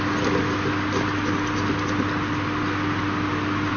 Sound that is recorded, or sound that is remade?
recorded